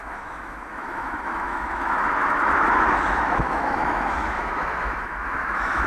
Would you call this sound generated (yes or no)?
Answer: yes